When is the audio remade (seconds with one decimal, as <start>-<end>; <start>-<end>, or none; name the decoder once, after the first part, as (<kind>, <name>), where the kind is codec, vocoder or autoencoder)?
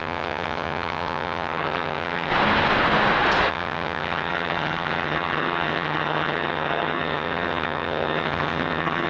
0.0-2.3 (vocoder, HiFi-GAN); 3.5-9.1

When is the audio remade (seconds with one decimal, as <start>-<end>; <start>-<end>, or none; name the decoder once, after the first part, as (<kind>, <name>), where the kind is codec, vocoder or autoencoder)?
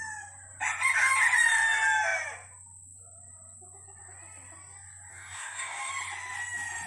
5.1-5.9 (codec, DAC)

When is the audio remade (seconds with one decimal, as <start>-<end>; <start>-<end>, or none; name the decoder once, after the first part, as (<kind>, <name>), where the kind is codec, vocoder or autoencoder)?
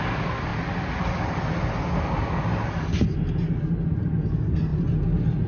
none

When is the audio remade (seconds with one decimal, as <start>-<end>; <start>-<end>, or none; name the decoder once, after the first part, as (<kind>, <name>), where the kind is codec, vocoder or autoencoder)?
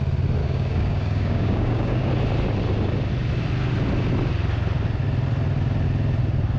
0.4-2.1 (codec, DAC)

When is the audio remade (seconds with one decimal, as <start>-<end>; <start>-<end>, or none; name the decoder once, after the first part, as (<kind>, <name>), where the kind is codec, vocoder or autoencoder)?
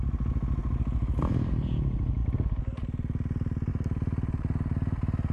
none